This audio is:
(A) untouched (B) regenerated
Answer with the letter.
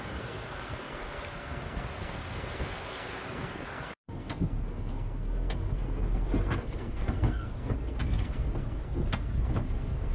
B